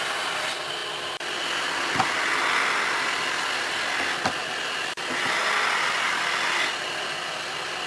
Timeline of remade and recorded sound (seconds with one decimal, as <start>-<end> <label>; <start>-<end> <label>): 0.0-7.9 recorded